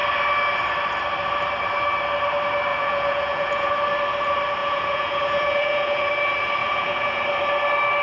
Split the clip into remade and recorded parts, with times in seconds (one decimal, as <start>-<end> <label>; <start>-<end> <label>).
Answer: 0.0-2.7 recorded; 2.7-3.7 remade; 3.7-4.6 recorded; 4.6-6.1 remade; 6.1-6.6 recorded; 6.6-7.2 remade; 7.2-8.0 recorded